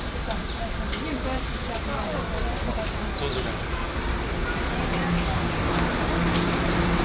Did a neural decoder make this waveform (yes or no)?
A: no